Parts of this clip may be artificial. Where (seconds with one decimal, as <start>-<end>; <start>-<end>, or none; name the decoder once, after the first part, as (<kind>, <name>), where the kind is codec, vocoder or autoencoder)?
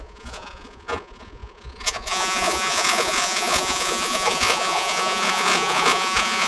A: 0.0-6.5 (vocoder, Vocos)